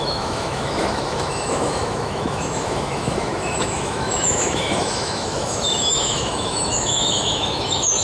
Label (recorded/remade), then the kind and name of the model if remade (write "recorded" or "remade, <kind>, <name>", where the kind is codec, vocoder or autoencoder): remade, autoencoder, DAC-VAE